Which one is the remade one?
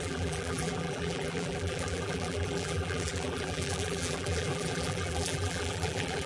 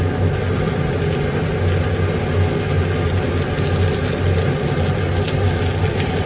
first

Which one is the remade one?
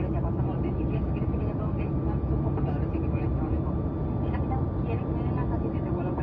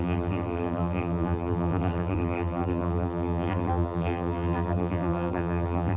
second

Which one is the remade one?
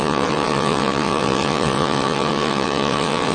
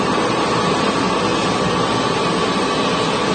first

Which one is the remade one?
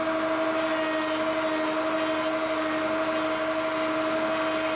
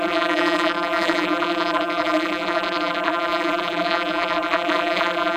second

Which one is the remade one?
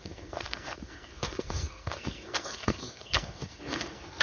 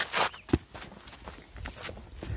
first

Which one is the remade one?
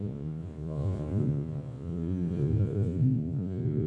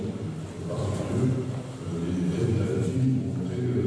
first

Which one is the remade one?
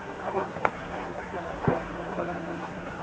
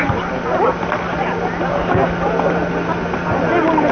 first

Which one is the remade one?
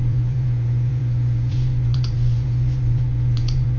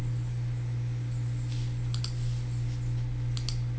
first